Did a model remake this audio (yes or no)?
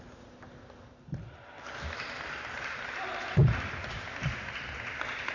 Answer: no